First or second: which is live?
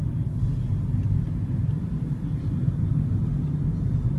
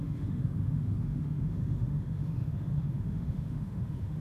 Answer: first